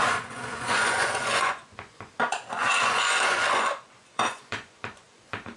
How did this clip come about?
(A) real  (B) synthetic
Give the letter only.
B